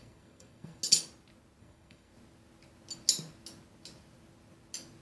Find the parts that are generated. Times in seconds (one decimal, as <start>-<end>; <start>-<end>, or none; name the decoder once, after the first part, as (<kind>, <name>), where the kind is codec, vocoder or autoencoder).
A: 0.0-0.8 (codec, SNAC); 1.6-2.1